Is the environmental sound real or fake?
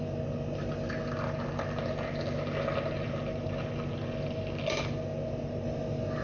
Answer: real